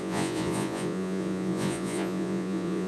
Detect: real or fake fake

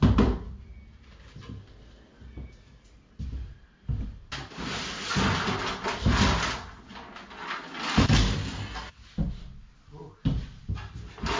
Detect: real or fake real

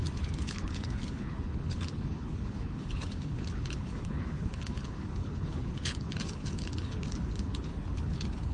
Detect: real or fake fake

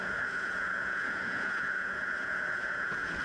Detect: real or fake fake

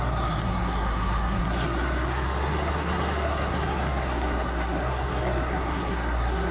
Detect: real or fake fake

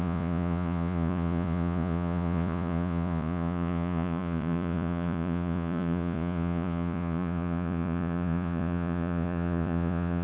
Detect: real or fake fake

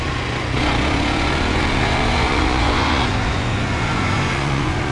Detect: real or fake fake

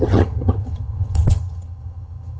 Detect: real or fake fake